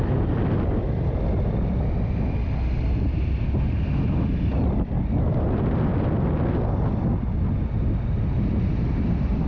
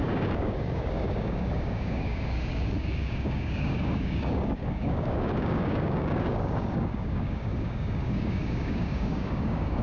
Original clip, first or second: first